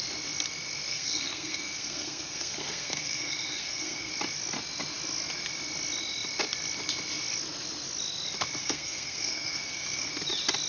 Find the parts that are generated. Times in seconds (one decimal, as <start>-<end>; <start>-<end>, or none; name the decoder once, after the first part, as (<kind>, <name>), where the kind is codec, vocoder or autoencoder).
0.9-4.1 (codec, SNAC); 8.6-10.1